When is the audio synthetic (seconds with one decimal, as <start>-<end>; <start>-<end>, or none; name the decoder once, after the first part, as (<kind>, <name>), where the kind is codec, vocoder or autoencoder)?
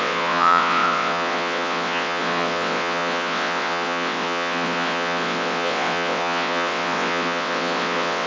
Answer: 0.0-8.3 (vocoder, WaveNeXt)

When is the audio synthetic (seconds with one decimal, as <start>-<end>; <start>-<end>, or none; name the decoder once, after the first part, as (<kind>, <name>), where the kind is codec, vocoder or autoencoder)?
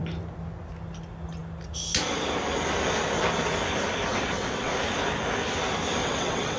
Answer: 4.1-4.7 (vocoder, WaveNeXt); 6.0-6.6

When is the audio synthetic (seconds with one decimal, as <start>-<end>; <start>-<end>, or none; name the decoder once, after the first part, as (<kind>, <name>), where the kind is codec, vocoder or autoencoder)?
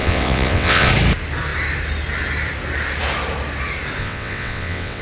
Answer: 0.0-0.9 (vocoder, WaveNeXt); 4.0-5.0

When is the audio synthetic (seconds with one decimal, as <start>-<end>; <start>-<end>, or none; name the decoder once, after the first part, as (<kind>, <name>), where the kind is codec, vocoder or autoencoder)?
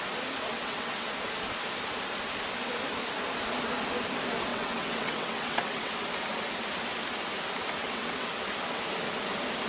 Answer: 0.5-1.1 (vocoder, WaveNeXt); 4.5-5.9; 7.8-8.3